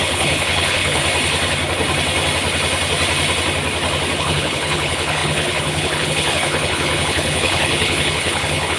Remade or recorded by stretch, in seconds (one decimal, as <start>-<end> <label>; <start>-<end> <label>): 0.0-1.0 remade; 1.0-4.2 recorded; 4.2-8.8 remade